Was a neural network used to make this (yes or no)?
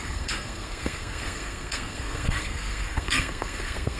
yes